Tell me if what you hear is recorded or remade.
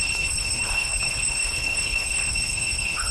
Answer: remade